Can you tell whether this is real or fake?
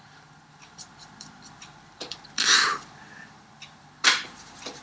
fake